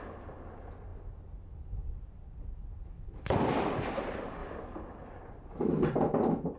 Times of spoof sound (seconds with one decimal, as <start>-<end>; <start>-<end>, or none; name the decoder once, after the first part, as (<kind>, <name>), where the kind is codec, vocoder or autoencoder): none